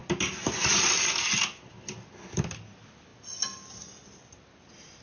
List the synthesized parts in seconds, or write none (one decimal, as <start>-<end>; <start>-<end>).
none